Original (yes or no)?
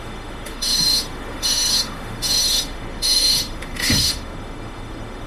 no